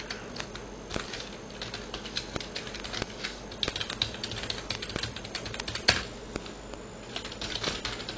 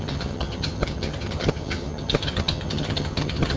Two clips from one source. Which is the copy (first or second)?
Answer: second